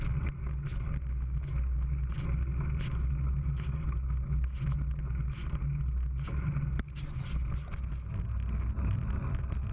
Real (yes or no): yes